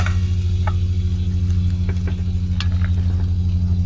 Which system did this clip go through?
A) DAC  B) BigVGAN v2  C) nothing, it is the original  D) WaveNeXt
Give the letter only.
C